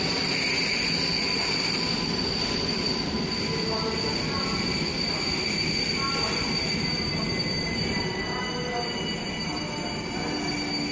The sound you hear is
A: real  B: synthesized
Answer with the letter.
A